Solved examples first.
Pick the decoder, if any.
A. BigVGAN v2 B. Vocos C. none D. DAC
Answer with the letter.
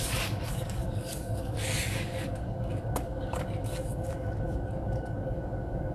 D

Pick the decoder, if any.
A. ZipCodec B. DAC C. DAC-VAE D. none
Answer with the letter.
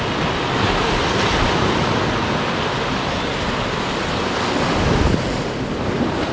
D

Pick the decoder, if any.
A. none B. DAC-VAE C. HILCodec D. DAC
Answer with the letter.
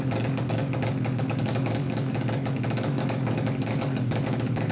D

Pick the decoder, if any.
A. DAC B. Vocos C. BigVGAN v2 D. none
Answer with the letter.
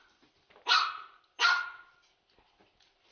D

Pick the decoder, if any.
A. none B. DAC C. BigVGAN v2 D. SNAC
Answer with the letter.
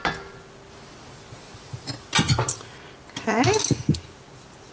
A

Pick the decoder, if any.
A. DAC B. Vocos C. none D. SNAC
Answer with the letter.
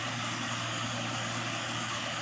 A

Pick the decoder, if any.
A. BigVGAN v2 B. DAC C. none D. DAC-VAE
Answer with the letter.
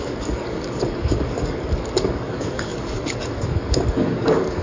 B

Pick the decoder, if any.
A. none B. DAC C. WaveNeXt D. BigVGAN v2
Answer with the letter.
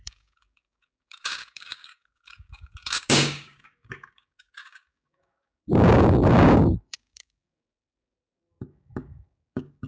B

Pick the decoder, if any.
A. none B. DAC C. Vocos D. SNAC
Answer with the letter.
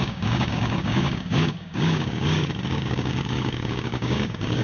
B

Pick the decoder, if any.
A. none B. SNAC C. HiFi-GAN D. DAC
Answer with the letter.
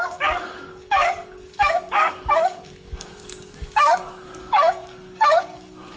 D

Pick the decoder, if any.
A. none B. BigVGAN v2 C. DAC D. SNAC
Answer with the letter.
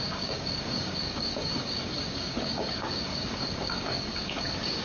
C